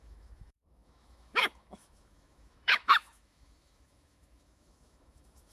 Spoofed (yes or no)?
yes